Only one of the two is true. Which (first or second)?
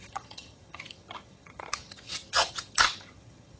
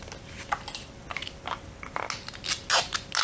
second